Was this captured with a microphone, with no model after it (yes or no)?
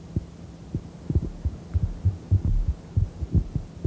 yes